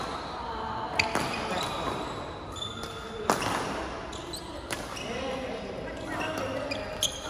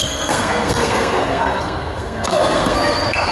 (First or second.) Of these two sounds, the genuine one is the first